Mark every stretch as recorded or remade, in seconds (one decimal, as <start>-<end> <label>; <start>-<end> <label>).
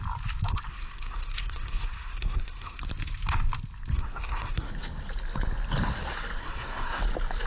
0.0-0.7 recorded; 0.7-2.8 remade; 2.8-3.9 recorded; 3.9-4.7 remade; 4.7-6.4 recorded; 6.4-7.0 remade; 7.0-7.5 recorded